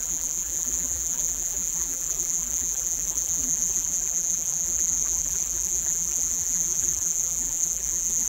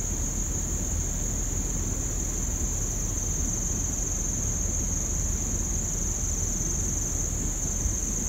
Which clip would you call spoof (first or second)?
first